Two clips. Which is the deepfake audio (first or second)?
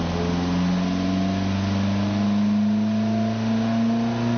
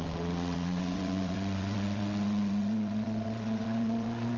second